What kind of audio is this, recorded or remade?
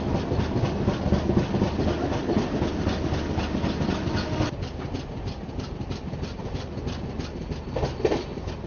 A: recorded